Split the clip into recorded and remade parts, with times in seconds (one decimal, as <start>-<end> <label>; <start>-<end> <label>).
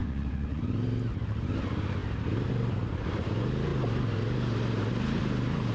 0.0-0.6 remade; 0.6-5.7 recorded